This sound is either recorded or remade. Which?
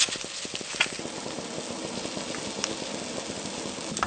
recorded